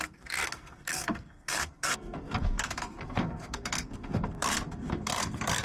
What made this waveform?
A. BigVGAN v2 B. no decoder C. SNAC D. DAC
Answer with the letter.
C